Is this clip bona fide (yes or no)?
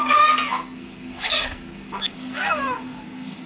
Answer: no